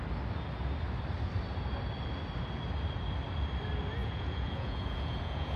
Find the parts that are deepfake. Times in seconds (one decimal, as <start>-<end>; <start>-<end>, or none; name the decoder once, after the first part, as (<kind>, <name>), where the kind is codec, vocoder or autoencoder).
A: 4.0-5.6 (vocoder, Vocos)